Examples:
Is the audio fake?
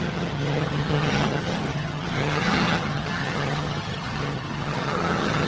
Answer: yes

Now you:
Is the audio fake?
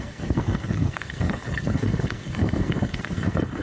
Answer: yes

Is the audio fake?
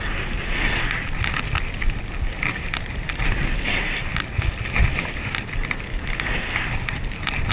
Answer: no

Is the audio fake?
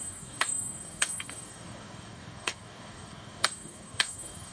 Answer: yes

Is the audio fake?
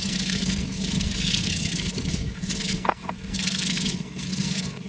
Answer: yes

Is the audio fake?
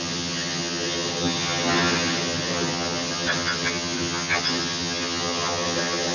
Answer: yes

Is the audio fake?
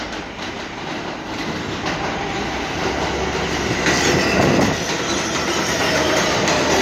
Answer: no